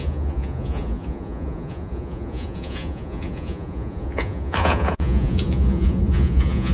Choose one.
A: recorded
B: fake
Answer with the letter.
B